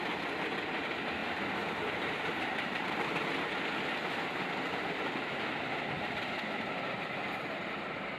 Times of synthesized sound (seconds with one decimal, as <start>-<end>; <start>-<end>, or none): 1.2-3.3